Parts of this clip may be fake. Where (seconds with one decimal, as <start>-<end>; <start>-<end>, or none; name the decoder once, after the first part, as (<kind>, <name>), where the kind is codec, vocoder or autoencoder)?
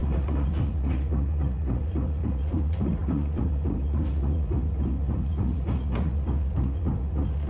0.0-7.5 (vocoder, Vocos)